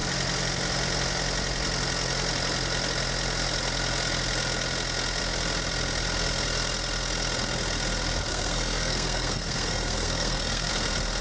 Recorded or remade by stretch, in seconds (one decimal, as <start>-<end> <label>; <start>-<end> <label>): 0.0-8.3 recorded; 8.3-10.7 remade; 10.7-11.2 recorded